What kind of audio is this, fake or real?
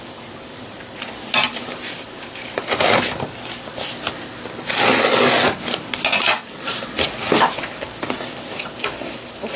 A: real